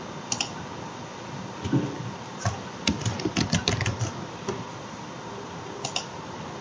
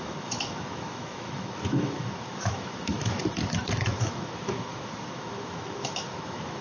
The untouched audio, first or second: first